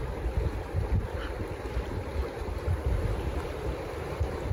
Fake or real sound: real